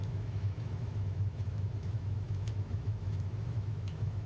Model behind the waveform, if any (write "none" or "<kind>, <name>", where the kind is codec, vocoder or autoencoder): autoencoder, DAC-VAE